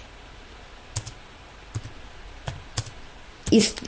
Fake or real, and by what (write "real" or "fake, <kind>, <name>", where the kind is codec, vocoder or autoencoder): real